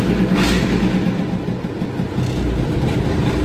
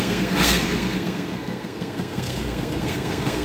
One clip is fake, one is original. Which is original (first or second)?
first